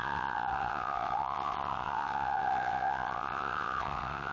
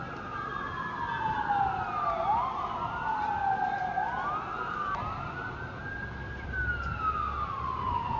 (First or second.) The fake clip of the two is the first